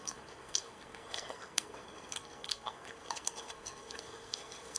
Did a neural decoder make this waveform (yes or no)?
yes